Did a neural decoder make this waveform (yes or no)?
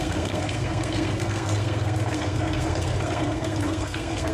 yes